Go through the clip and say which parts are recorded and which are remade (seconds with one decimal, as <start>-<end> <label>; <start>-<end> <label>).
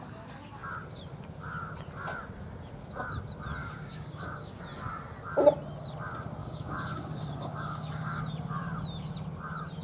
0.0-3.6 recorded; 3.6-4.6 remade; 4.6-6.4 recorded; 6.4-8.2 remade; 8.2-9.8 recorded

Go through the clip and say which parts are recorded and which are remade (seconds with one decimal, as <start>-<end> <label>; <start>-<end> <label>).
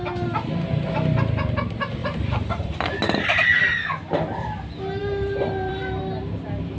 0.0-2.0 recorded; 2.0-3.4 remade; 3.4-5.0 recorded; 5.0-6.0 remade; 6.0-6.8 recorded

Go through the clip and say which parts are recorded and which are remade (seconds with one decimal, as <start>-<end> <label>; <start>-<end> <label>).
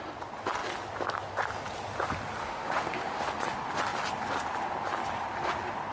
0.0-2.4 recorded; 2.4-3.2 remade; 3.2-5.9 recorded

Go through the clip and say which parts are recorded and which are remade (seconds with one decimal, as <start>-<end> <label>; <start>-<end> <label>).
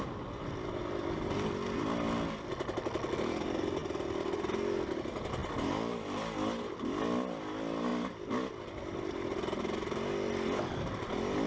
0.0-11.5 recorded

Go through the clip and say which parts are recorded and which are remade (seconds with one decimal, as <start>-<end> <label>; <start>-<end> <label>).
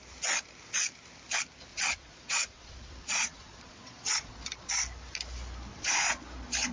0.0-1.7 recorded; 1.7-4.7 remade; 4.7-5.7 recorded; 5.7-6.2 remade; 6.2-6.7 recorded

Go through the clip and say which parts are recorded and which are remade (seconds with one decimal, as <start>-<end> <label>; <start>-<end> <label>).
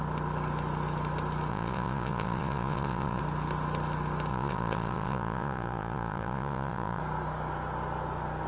0.0-1.5 recorded; 1.5-3.2 remade; 3.2-4.3 recorded; 4.3-7.0 remade; 7.0-8.5 recorded